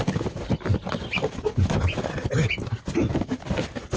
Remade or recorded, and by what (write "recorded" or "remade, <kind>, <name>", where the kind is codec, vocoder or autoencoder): recorded